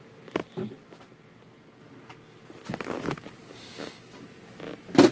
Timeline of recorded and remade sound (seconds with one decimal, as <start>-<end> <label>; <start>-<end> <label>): 0.0-3.4 recorded; 3.4-4.2 remade; 4.2-5.1 recorded